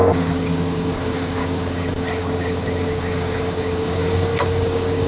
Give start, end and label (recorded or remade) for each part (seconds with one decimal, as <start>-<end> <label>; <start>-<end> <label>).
0.0-5.1 remade